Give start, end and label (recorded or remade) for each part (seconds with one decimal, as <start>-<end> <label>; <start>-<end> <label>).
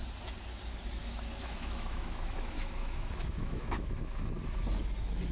0.0-1.0 recorded; 1.0-4.2 remade; 4.2-5.3 recorded